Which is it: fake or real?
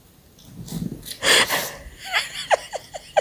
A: real